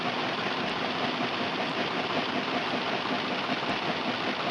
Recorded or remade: recorded